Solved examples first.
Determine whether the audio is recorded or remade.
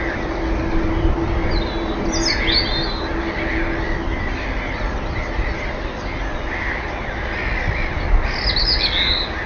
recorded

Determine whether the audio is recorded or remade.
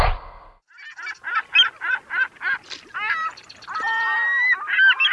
recorded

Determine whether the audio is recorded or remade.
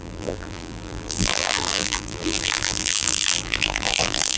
remade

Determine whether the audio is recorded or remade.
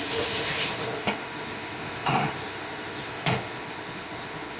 remade